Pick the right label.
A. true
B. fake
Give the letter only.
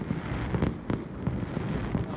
A